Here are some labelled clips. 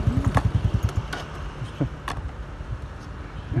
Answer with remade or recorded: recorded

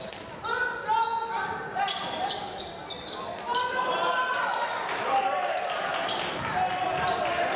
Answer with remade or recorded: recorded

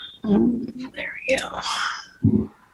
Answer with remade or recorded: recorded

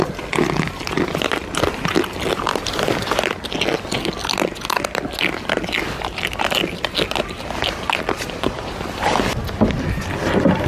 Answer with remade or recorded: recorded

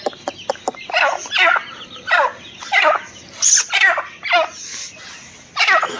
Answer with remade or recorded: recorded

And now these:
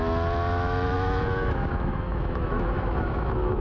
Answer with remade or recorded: remade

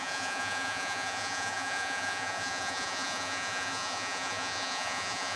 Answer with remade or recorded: remade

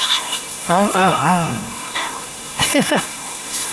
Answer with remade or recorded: remade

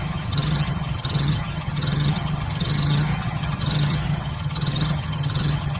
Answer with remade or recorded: remade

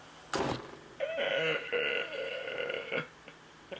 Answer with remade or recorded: recorded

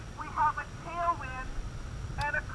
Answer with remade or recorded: recorded